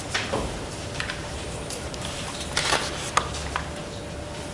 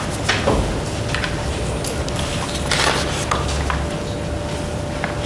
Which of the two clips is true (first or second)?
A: second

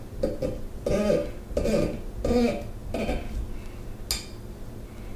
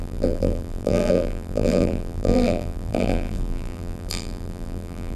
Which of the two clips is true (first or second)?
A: first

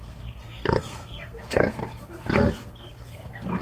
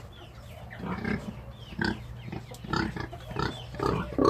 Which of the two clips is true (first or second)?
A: second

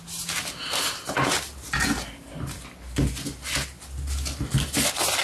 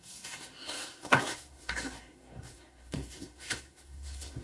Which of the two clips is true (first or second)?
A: first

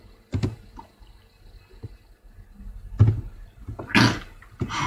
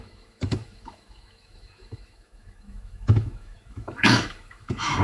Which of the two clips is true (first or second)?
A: first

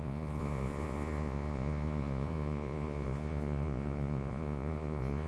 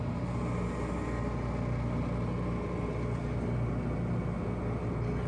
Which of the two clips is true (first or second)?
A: second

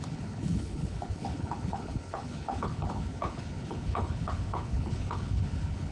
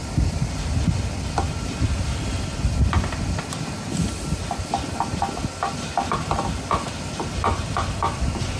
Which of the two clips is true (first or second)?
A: second